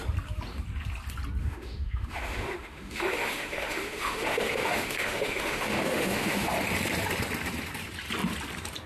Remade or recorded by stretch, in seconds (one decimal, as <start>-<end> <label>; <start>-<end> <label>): 0.0-1.4 recorded; 1.4-6.5 remade; 6.5-8.9 recorded